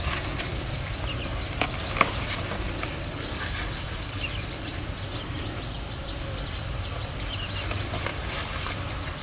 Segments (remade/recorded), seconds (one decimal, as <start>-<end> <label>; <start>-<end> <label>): 0.0-4.7 recorded; 4.7-5.4 remade; 5.4-8.1 recorded; 8.1-8.7 remade; 8.7-9.2 recorded